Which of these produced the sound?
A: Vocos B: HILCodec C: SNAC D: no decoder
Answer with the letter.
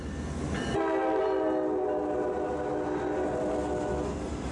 D